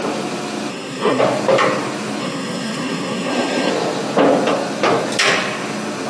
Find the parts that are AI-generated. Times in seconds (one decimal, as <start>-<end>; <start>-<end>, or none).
0.7-1.2; 2.2-3.7